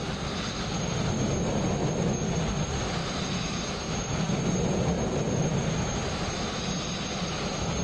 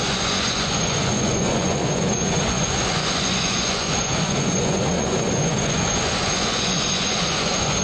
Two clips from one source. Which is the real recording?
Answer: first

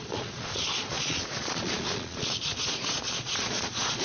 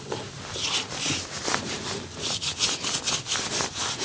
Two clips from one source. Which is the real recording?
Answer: second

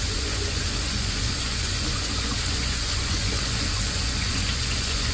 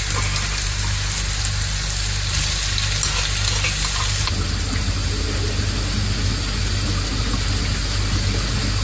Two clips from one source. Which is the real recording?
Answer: second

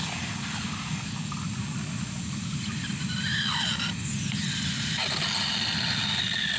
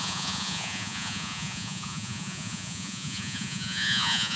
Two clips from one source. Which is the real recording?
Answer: first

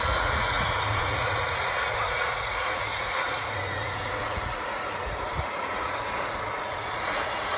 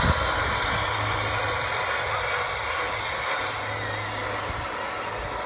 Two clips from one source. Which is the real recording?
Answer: second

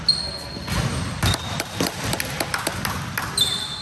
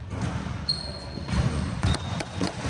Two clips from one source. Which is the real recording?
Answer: first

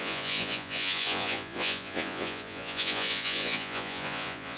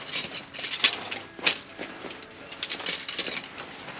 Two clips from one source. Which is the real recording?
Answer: second